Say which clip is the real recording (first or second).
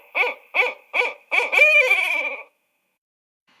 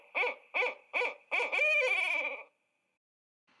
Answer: second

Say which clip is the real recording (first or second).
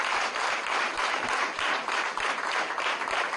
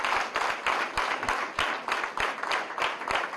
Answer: second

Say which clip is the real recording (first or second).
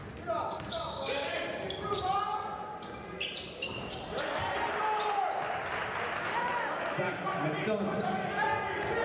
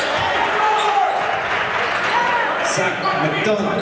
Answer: first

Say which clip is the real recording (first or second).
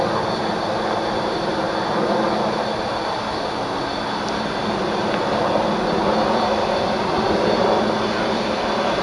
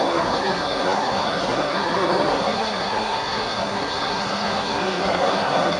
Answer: first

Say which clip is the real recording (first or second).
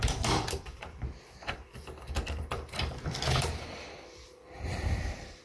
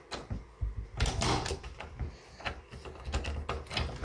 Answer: second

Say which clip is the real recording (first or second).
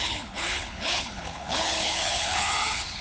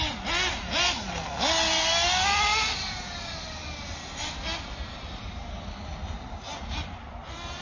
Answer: second